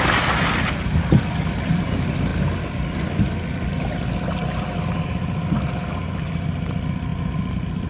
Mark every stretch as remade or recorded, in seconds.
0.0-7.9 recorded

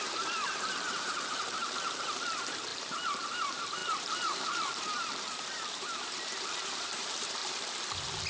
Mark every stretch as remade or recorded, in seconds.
0.0-7.4 remade; 7.4-8.3 recorded